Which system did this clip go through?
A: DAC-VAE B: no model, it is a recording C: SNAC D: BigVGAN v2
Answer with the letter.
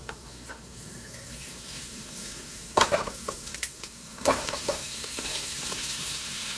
C